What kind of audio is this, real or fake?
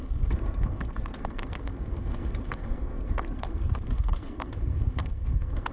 fake